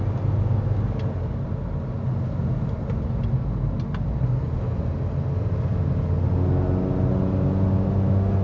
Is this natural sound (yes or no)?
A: yes